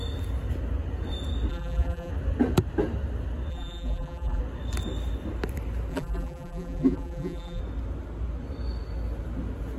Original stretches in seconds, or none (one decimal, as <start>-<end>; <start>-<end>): 0.0-1.5; 2.1-3.5; 4.4-5.9; 7.6-9.8